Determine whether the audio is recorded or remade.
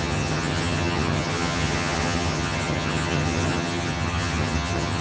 remade